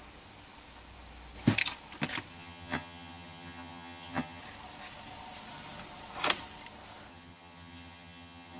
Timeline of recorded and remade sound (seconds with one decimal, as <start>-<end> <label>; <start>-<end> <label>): 0.0-2.3 recorded; 2.3-4.4 remade; 4.4-7.1 recorded; 7.1-8.6 remade